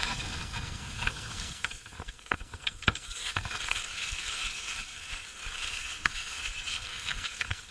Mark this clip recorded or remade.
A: remade